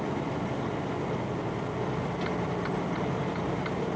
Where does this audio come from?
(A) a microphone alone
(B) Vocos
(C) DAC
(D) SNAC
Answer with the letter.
A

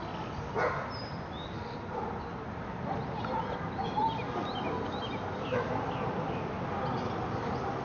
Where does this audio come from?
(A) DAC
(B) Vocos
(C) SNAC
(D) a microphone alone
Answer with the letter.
D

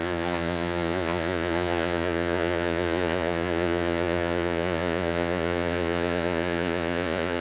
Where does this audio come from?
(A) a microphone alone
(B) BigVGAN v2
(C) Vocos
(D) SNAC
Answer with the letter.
C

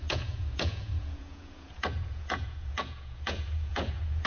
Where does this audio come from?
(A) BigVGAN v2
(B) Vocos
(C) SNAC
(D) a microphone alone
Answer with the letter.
B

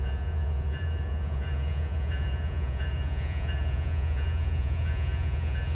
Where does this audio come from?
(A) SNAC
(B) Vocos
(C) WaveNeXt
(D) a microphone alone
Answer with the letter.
B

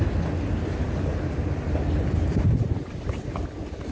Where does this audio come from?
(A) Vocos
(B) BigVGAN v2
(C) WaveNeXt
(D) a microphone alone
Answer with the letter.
D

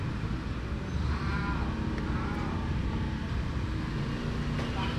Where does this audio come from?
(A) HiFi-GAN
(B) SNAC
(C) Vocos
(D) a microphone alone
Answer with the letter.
D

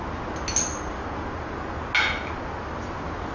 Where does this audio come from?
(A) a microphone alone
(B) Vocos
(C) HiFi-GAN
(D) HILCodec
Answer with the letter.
A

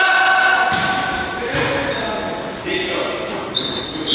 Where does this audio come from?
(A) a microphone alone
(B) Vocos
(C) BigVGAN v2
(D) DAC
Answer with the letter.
A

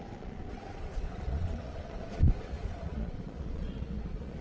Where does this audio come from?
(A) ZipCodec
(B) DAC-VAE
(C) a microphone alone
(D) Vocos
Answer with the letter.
D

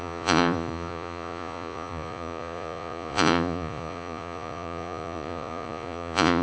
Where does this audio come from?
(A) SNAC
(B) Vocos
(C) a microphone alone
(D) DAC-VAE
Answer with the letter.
B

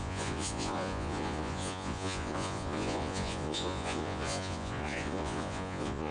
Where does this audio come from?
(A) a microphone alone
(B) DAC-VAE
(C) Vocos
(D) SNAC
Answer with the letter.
C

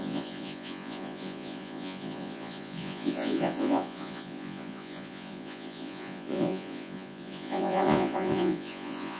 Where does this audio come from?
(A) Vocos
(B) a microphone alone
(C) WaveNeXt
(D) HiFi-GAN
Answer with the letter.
A